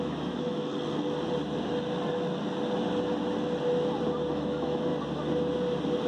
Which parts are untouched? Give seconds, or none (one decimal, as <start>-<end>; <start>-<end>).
0.7-4.3; 4.9-6.1